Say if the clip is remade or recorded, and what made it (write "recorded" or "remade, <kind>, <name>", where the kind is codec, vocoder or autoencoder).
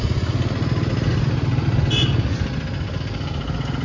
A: recorded